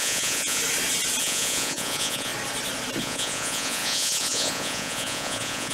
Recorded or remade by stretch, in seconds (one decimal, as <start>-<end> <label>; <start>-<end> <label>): 0.0-0.6 remade; 0.6-1.2 recorded; 1.2-2.3 remade; 2.3-3.0 recorded; 3.0-5.7 remade